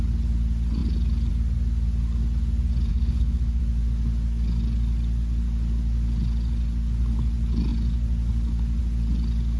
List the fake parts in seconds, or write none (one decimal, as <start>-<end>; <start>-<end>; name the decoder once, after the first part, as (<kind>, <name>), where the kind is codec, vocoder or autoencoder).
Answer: 2.9-3.6 (codec, HILCodec)